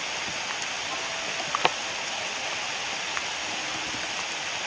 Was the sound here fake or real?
real